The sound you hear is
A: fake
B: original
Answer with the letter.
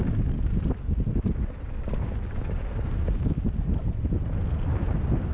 B